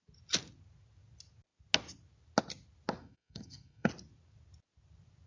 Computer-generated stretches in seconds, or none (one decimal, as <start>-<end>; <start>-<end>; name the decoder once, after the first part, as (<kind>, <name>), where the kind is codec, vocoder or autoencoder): 3.0-3.9 (codec, SNAC)